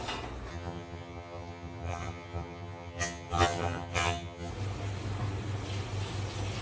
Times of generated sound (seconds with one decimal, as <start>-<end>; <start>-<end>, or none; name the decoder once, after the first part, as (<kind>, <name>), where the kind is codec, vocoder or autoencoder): 0.5-4.5 (vocoder, HiFi-GAN)